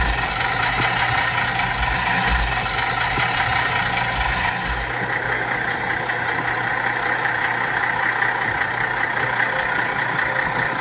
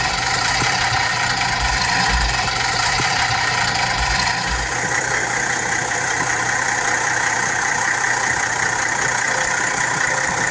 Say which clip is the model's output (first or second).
second